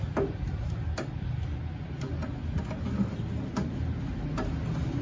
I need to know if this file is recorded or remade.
recorded